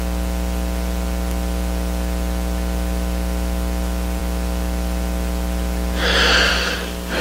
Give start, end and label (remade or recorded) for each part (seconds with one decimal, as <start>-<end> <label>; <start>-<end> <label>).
0.0-7.2 recorded